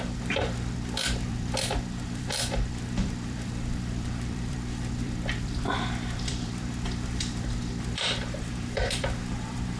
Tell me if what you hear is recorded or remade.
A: remade